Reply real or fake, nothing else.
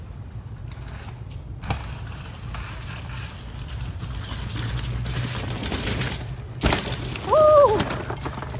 real